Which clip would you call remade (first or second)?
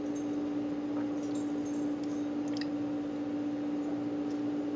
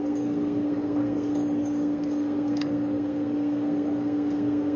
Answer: second